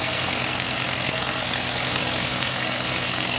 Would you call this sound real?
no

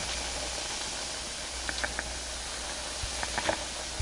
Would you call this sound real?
yes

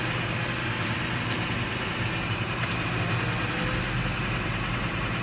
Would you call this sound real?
yes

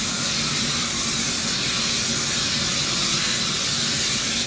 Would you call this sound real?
yes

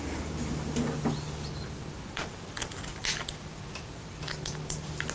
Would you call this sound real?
yes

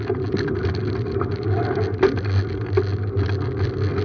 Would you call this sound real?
yes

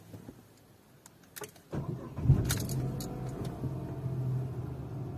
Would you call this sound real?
yes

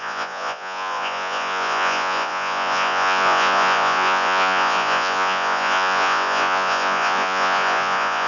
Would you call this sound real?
no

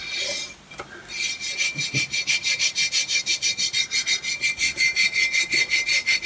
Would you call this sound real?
yes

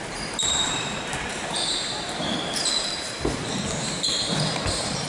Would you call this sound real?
no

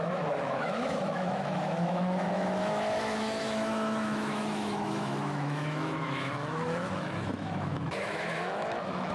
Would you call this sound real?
no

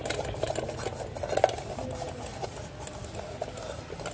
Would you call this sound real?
yes